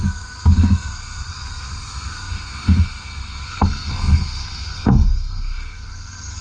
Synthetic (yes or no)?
yes